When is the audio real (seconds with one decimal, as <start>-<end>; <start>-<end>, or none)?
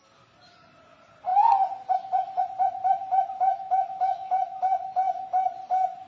0.0-3.5; 4.6-6.1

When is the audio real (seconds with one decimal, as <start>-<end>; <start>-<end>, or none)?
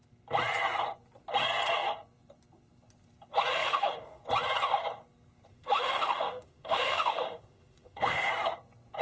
0.0-3.5; 4.2-5.5; 8.3-9.0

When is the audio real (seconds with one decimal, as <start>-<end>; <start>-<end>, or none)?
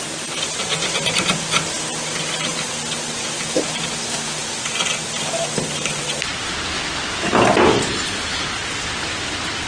0.0-9.7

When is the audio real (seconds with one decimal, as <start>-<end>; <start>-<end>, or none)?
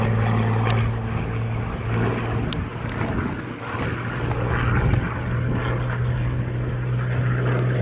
0.0-7.8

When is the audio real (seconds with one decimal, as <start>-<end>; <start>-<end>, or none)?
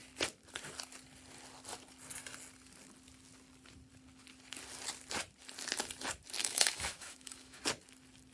0.0-6.4; 7.6-8.3